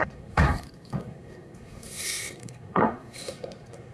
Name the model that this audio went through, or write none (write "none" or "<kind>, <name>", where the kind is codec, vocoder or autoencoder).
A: codec, SNAC